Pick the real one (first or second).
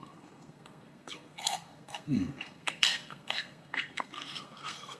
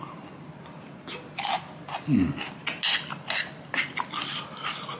second